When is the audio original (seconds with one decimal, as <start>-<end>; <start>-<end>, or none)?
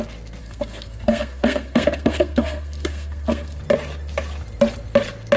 0.0-0.4; 3.6-5.4